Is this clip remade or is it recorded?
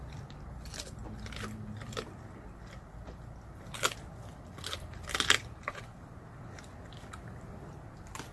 recorded